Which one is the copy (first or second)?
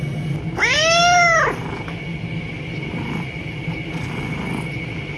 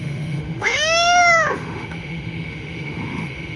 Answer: second